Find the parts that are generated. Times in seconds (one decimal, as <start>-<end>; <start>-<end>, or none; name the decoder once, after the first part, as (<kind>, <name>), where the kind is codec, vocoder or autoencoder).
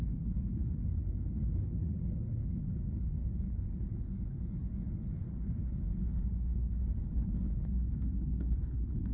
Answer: 0.0-9.1 (codec, HILCodec)